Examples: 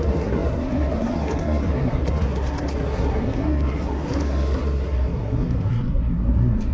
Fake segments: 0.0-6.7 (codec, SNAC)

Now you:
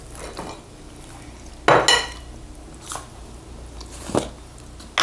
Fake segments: none

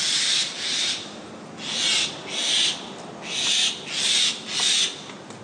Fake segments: none